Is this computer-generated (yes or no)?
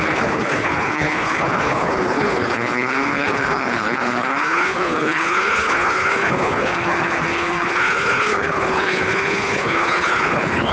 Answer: yes